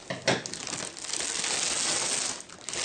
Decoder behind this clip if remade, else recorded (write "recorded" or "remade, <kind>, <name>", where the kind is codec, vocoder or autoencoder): recorded